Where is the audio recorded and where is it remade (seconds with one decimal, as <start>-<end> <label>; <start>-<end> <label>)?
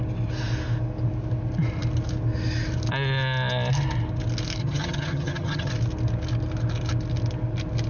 0.0-4.6 recorded; 4.6-5.7 remade; 5.7-7.9 recorded